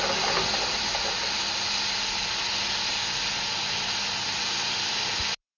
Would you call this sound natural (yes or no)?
yes